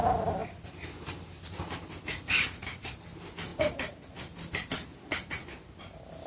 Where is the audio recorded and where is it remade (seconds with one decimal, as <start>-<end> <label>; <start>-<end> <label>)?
0.0-0.4 recorded; 0.4-2.9 remade; 2.9-6.3 recorded